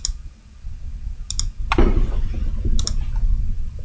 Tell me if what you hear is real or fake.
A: real